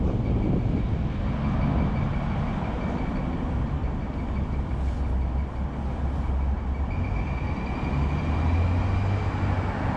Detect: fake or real real